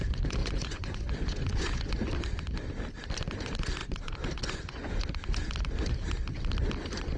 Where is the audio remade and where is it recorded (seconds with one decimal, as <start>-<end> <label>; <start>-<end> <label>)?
0.0-0.4 recorded; 0.4-1.9 remade; 1.9-3.8 recorded; 3.8-5.0 remade; 5.0-7.2 recorded